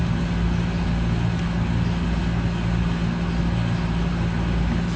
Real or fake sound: real